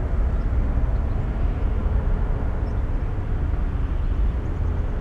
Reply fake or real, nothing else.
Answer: real